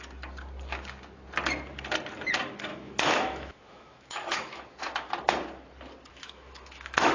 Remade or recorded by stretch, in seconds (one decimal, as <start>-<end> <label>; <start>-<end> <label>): 0.0-2.7 recorded; 2.7-5.1 remade; 5.1-6.1 recorded; 6.1-7.1 remade